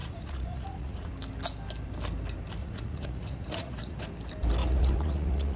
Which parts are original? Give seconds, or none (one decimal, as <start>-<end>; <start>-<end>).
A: 1.1-2.6; 4.0-4.6